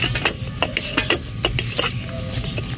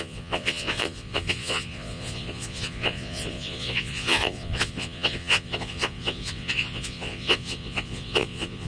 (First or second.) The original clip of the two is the first